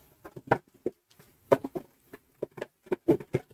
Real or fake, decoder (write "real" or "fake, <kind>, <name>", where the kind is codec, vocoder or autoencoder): real